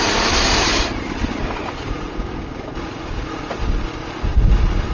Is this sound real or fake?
real